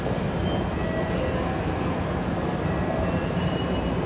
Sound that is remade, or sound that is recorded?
recorded